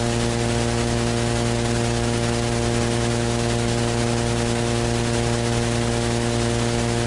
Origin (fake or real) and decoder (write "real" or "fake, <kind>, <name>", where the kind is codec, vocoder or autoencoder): real